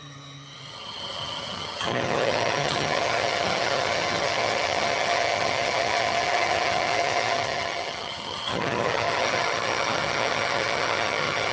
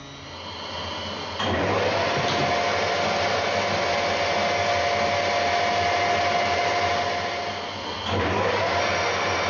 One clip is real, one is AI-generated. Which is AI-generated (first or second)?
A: first